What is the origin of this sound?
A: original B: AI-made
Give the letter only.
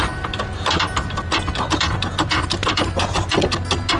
A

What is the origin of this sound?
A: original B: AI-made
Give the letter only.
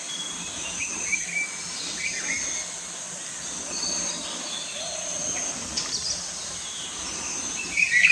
B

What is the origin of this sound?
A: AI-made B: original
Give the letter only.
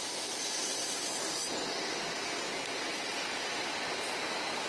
B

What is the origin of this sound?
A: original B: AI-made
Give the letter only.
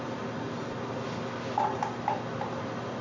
A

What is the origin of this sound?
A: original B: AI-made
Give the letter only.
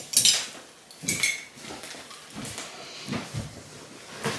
A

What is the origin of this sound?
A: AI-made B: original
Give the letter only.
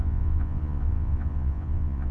A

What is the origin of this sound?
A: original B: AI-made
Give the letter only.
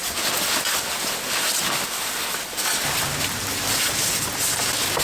A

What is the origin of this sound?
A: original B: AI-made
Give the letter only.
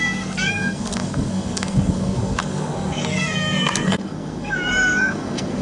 B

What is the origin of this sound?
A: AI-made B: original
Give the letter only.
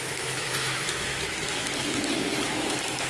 A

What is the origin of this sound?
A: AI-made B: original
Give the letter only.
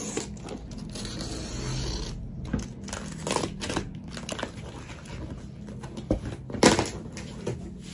B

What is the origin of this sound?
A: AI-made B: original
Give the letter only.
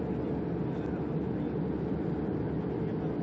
B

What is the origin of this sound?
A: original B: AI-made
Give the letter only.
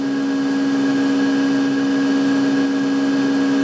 A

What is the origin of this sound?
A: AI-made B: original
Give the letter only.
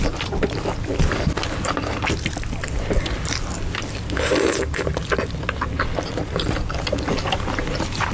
B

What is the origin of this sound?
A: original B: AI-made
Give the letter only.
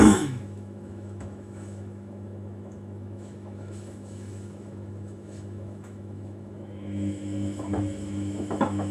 B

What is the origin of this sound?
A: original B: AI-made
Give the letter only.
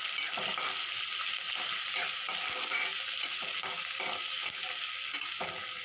A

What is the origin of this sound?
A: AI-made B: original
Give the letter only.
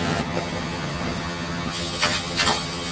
A